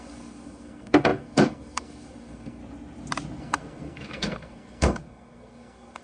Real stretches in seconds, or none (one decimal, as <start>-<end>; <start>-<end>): 2.6-3.4

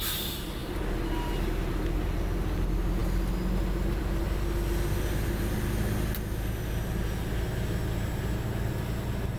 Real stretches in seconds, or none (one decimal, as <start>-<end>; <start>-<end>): 0.0-9.4

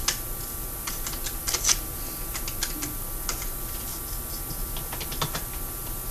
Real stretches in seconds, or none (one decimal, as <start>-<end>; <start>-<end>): 0.0-6.1

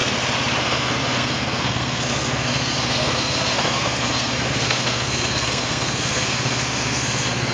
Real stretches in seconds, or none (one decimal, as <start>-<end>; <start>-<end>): 0.0-0.6

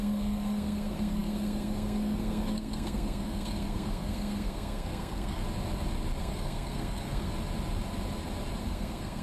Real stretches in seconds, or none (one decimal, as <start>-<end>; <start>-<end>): 5.4-6.2; 7.3-8.6

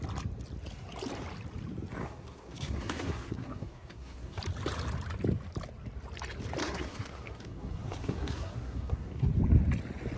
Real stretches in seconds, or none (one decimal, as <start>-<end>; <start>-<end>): 0.0-2.0; 4.4-6.6; 9.3-10.2